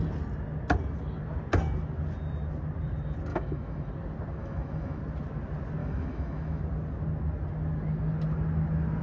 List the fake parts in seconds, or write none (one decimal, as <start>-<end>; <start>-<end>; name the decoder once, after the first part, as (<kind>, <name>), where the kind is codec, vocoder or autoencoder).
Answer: 3.3-3.9 (autoencoder, DAC-VAE); 4.4-5.0; 5.8-6.6